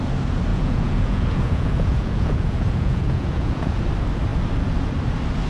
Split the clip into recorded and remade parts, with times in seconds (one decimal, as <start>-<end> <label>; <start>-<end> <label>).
0.0-0.5 recorded; 0.5-3.8 remade; 3.8-5.5 recorded

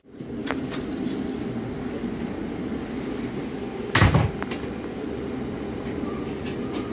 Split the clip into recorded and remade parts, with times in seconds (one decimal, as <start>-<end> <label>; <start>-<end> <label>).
0.0-0.4 recorded; 0.4-1.2 remade; 1.2-3.8 recorded; 3.8-4.3 remade; 4.3-6.9 recorded

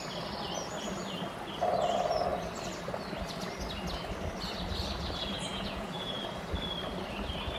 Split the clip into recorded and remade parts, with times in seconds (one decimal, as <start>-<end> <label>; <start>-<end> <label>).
0.0-5.5 recorded; 5.5-6.2 remade; 6.2-7.6 recorded

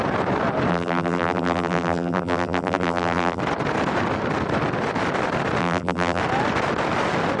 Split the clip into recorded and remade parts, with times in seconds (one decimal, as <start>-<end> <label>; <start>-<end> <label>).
0.0-0.7 recorded; 0.7-3.4 remade; 3.4-5.6 recorded; 5.6-6.2 remade; 6.2-7.4 recorded

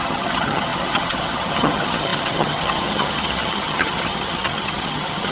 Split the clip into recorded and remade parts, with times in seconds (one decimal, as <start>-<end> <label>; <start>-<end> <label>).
0.0-5.3 remade